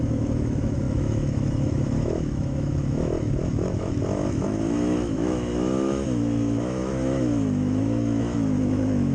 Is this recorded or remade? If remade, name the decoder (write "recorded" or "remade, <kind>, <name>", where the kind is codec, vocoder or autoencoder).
remade, autoencoder, DAC-VAE